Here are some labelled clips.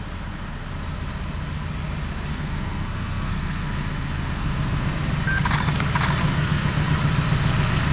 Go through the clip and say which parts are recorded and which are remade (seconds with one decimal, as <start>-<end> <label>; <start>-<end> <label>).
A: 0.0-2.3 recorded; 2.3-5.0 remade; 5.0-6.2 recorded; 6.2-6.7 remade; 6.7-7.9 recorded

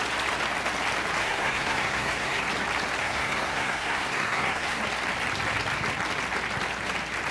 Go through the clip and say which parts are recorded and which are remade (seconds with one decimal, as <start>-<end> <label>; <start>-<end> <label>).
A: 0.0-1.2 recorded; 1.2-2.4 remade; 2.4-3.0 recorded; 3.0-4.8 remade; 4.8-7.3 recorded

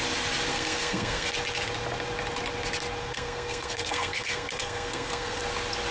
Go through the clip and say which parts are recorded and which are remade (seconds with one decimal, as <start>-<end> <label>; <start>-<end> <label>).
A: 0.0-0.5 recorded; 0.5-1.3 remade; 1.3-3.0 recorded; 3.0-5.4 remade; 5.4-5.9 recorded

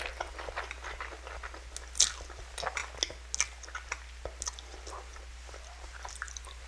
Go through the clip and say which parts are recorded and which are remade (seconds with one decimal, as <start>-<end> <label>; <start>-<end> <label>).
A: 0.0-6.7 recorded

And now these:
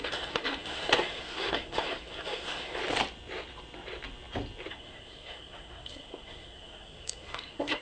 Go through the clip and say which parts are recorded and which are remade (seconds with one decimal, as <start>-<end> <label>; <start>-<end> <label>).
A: 0.0-2.8 remade; 2.8-4.7 recorded; 4.7-7.8 remade

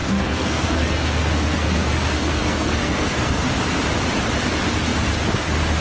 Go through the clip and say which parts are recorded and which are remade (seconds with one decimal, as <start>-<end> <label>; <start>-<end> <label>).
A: 0.0-3.5 remade; 3.5-5.8 recorded

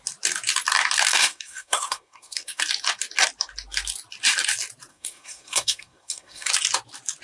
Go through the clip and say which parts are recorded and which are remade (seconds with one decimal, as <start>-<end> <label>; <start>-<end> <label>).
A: 0.0-1.2 recorded; 1.2-2.6 remade; 2.6-4.9 recorded; 4.9-6.5 remade; 6.5-7.2 recorded

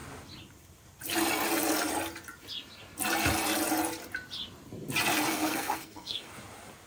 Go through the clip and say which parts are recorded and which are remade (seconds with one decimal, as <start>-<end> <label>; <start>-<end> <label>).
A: 0.0-5.3 recorded; 5.3-6.3 remade; 6.3-6.9 recorded